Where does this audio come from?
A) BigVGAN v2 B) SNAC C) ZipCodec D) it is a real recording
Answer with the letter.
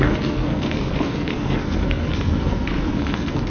B